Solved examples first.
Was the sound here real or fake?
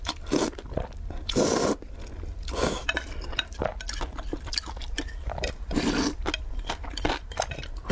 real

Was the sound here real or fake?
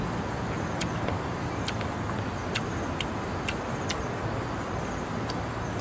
real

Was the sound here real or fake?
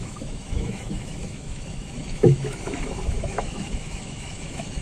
fake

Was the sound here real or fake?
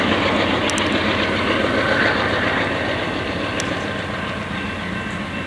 real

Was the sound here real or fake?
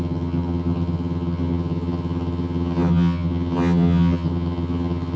fake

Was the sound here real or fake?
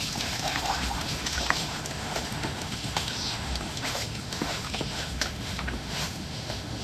fake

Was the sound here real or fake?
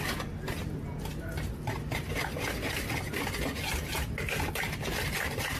real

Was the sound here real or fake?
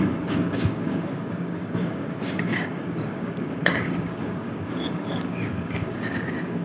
fake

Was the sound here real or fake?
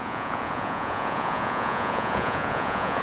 fake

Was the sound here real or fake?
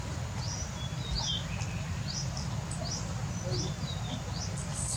real